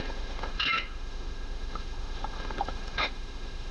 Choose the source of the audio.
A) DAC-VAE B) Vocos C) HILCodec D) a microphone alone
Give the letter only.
A